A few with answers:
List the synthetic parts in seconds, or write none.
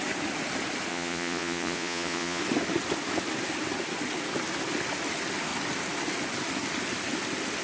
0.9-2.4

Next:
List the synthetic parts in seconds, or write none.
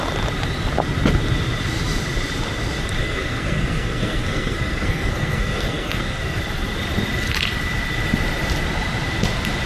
3.0-6.4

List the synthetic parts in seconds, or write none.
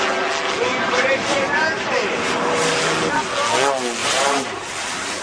0.7-2.8; 4.0-4.6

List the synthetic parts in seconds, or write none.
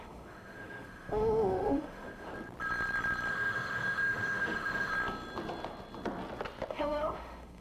0.0-2.3; 3.3-4.9; 6.7-7.6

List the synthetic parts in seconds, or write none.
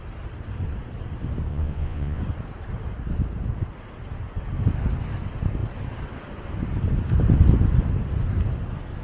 1.5-2.2